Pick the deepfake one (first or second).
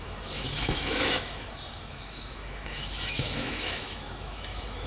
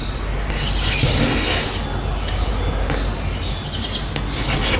first